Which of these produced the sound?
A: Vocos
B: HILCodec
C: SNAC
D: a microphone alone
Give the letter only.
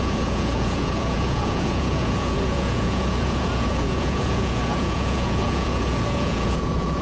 A